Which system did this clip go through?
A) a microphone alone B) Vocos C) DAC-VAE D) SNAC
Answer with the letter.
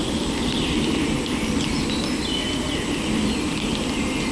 A